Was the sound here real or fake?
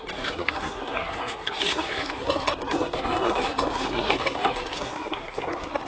fake